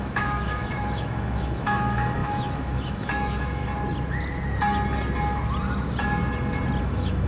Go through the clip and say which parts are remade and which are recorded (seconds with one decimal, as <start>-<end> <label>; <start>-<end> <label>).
0.0-3.6 remade; 3.6-6.8 recorded; 6.8-7.3 remade